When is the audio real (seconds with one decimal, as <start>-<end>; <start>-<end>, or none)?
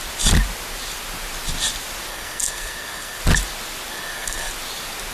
0.0-2.1; 3.2-3.9; 4.5-5.1